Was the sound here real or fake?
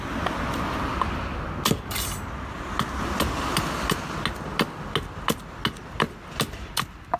real